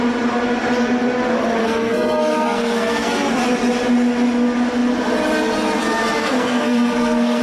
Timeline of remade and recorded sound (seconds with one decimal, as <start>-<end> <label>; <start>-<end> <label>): 0.0-1.6 recorded; 1.6-3.3 remade; 3.3-6.2 recorded; 6.2-7.4 remade

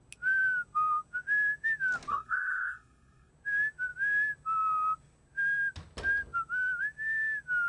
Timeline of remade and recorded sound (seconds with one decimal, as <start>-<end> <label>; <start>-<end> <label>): 0.0-2.1 recorded; 2.1-3.3 remade; 3.3-7.7 recorded

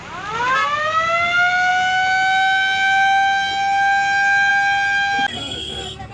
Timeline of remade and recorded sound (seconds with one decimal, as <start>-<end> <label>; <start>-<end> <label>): 0.0-5.3 recorded; 5.3-6.1 remade

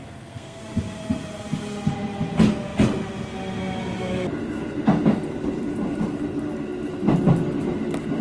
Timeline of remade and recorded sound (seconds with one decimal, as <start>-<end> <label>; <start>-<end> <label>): 0.0-0.6 remade; 0.6-8.2 recorded

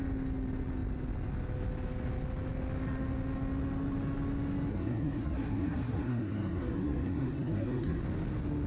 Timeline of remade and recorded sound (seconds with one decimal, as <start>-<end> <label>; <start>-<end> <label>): 0.0-4.7 recorded; 4.7-8.0 remade; 8.0-8.7 recorded

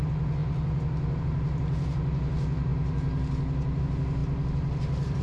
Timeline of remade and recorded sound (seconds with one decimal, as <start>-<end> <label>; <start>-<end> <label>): 0.0-5.2 recorded